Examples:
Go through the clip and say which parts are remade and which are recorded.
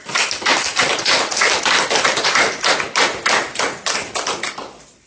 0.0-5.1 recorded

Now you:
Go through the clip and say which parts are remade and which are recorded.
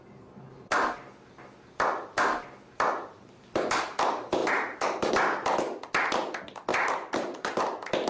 0.0-4.4 recorded; 4.4-5.1 remade; 5.1-6.7 recorded; 6.7-7.6 remade; 7.6-8.1 recorded